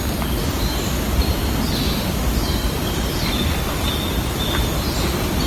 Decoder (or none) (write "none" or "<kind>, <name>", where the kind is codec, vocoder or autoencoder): none